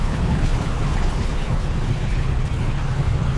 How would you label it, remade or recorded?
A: remade